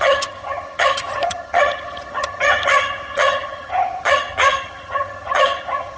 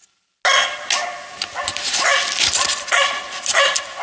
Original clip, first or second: second